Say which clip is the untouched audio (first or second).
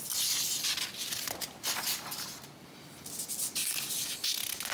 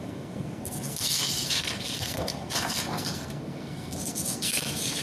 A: first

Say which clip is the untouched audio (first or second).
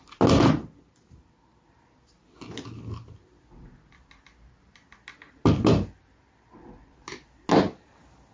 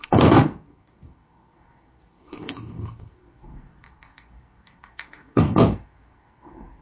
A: first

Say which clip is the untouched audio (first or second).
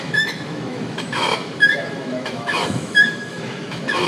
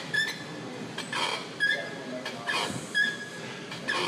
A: second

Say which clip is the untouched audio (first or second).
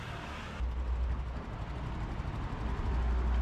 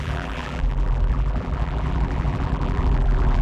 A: first